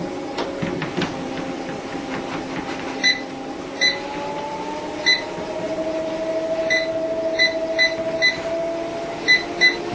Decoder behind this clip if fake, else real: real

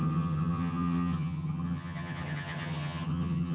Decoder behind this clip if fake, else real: fake, vocoder, HiFi-GAN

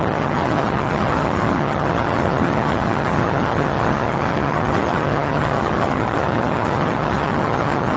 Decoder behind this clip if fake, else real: fake, vocoder, HiFi-GAN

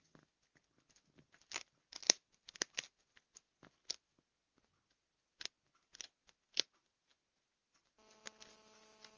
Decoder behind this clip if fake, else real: real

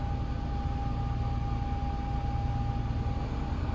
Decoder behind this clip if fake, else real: real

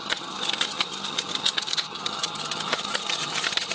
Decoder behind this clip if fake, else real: fake, vocoder, HiFi-GAN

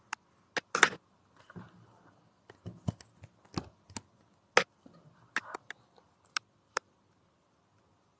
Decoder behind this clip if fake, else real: real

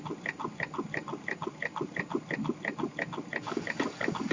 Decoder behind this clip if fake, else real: real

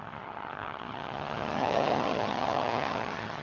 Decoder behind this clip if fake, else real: fake, vocoder, HiFi-GAN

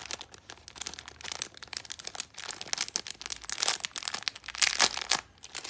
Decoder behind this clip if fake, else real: real